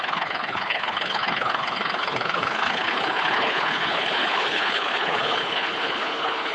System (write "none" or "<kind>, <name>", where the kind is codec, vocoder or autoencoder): codec, HILCodec